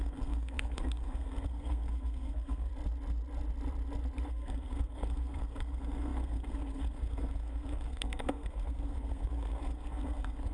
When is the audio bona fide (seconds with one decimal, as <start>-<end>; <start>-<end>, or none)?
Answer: 2.7-4.3